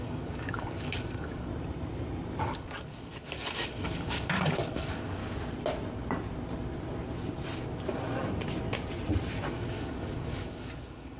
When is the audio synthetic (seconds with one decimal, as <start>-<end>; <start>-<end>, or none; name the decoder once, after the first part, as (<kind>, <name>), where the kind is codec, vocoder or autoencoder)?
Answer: 0.0-1.5 (codec, DAC); 2.4-5.2; 9.5-11.2